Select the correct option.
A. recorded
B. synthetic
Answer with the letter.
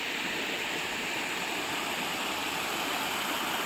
B